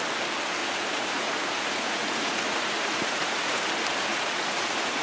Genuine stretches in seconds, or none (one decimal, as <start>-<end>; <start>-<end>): 0.0-0.6; 3.6-4.1